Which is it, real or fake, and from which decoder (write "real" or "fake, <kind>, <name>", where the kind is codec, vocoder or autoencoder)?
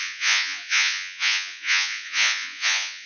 fake, vocoder, Vocos